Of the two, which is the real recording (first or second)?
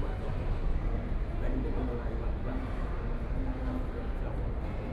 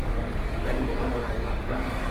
first